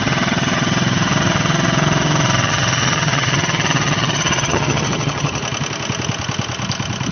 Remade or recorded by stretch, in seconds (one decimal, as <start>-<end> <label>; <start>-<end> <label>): 0.0-5.4 remade; 5.4-7.1 recorded